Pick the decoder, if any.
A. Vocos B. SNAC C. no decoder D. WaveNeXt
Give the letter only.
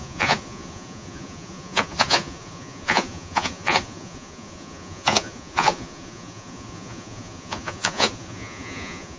A